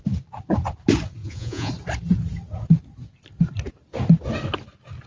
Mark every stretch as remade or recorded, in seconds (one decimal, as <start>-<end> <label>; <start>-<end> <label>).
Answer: 0.0-1.2 recorded; 1.2-1.7 remade; 1.7-5.1 recorded